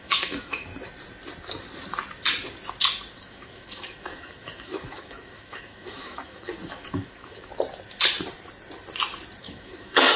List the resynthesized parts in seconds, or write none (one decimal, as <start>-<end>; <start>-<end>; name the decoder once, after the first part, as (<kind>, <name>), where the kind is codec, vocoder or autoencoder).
0.0-0.7 (autoencoder, DAC-VAE); 3.1-7.5; 9.4-10.2